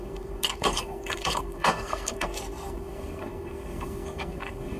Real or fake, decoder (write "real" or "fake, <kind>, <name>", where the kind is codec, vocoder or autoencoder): fake, codec, SNAC